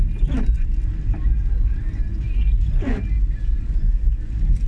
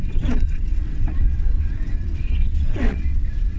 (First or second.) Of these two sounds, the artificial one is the second